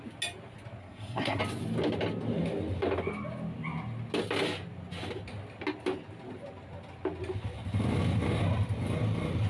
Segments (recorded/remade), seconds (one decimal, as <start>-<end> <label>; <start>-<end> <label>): 0.0-0.8 recorded; 0.8-1.4 remade; 1.4-9.5 recorded